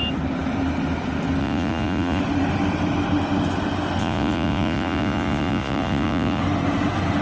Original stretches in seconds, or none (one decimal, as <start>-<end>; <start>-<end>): 0.0-1.4; 2.2-4.0; 6.4-7.2